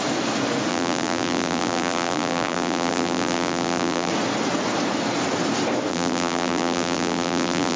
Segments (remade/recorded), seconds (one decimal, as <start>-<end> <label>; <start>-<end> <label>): 0.0-0.7 recorded; 0.7-4.1 remade; 4.1-5.9 recorded; 5.9-7.8 remade